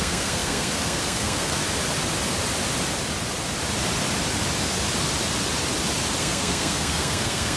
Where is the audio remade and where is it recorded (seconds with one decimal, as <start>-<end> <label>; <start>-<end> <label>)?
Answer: 0.0-1.6 remade; 1.6-6.2 recorded; 6.2-7.6 remade